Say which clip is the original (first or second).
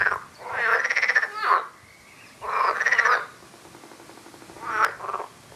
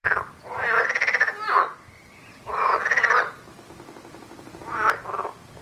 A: first